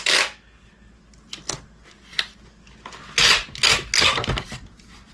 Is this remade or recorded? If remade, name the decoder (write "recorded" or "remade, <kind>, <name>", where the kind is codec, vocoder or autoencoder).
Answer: recorded